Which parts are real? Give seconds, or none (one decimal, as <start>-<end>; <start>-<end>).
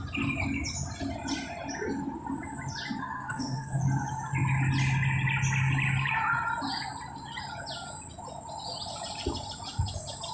0.0-3.0; 3.8-10.3